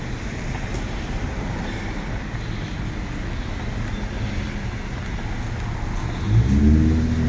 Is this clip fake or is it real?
real